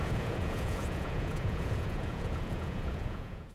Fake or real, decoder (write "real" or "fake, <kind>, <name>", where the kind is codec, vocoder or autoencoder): fake, vocoder, Vocos